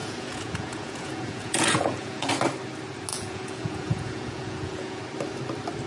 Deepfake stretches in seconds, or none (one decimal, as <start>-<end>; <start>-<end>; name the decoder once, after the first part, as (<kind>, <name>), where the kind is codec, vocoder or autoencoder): 0.0-2.3 (vocoder, Vocos); 3.1-5.0